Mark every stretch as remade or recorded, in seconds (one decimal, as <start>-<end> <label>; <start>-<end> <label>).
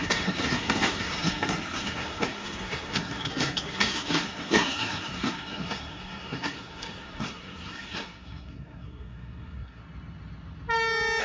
0.0-9.8 remade; 9.8-11.2 recorded